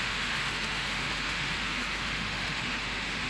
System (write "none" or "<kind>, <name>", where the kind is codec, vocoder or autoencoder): autoencoder, DAC-VAE